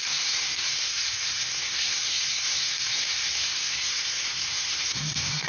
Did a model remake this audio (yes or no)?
yes